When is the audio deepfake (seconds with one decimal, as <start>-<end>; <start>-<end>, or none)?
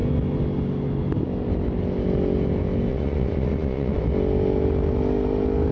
2.9-4.0